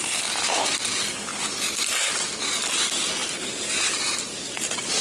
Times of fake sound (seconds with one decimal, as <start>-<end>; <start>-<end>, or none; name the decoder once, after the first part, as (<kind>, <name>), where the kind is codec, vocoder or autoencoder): none